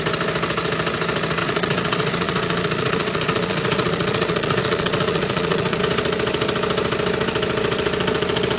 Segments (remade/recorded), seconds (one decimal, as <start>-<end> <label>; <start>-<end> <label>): 0.0-1.4 recorded; 1.4-5.8 remade; 5.8-8.6 recorded